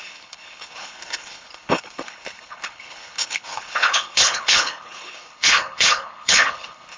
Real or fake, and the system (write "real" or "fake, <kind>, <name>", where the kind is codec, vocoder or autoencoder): fake, codec, HILCodec